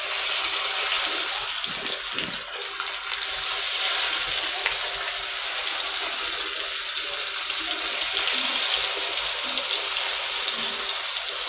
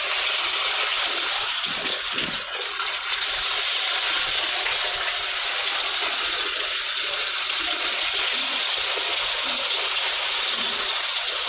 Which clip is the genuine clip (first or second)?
first